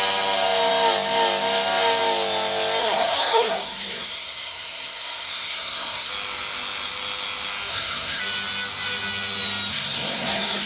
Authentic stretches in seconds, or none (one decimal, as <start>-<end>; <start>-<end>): 0.0-2.8; 6.1-7.7; 8.2-9.7